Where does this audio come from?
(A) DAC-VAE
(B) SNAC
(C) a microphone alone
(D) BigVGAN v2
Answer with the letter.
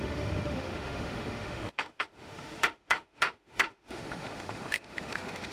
A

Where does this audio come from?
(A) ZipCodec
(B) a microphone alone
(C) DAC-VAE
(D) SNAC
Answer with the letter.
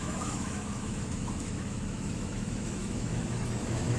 C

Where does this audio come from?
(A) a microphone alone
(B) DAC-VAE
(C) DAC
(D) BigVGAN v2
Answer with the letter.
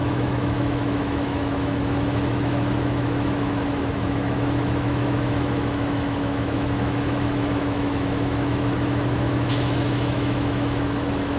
B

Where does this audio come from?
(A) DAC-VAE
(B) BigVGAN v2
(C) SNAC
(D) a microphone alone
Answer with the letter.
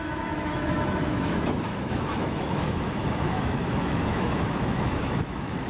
A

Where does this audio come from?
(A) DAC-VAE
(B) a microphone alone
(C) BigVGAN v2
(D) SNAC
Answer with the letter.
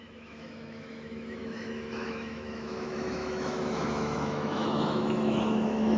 A